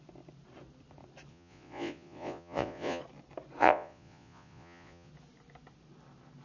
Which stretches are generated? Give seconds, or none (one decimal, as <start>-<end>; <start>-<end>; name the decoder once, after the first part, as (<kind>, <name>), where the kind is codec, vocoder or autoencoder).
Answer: 1.3-3.0 (vocoder, Vocos); 3.6-5.1